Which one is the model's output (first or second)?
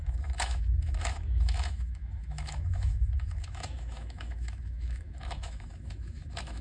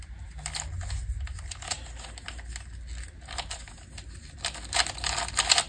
first